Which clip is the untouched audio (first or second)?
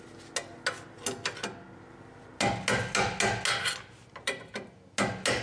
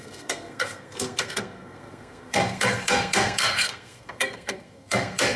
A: first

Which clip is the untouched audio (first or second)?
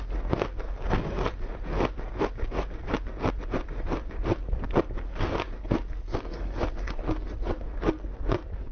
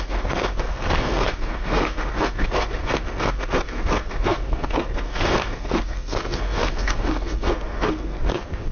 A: first